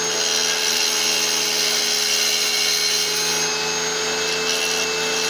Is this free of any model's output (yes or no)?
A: yes